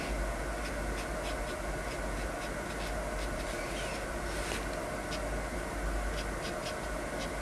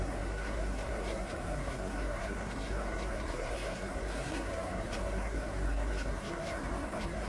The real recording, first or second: first